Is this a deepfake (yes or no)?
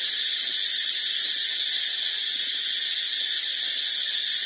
no